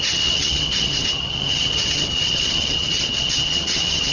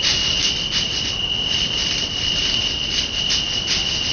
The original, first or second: second